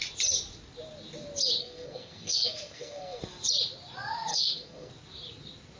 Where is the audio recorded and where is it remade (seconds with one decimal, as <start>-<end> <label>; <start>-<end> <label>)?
0.0-1.6 recorded; 1.6-3.2 remade; 3.2-4.3 recorded; 4.3-4.9 remade; 4.9-5.8 recorded

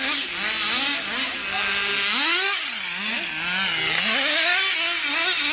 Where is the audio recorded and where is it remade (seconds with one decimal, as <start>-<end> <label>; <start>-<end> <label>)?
0.0-5.5 recorded

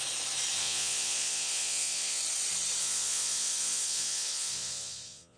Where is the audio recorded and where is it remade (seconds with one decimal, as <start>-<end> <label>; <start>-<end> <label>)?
0.0-0.6 recorded; 0.6-2.2 remade; 2.2-2.8 recorded; 2.8-5.4 remade

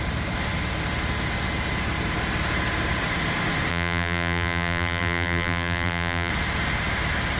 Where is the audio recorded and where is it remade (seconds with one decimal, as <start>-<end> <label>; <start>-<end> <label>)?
0.0-3.7 recorded; 3.7-6.3 remade; 6.3-7.4 recorded

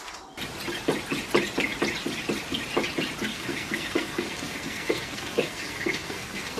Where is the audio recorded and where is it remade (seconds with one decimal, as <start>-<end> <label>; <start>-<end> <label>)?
0.0-3.3 recorded; 3.3-6.6 remade

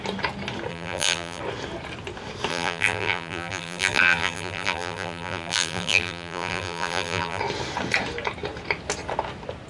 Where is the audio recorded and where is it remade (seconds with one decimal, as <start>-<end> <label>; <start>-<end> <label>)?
0.0-0.7 recorded; 0.7-1.4 remade; 1.4-2.5 recorded; 2.5-7.4 remade; 7.4-9.7 recorded

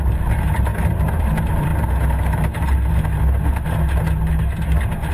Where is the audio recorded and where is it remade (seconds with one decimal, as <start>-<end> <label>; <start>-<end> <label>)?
0.0-1.7 remade; 1.7-4.4 recorded; 4.4-5.1 remade